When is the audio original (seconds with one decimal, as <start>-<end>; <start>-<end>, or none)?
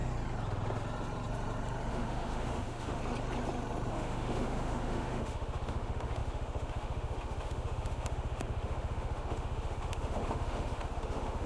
0.0-1.9; 3.0-3.9